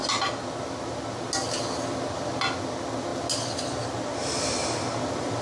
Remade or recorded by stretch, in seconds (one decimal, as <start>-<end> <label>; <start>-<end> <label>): 0.0-5.4 recorded